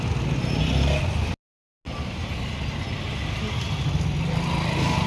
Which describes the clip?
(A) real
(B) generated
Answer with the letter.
A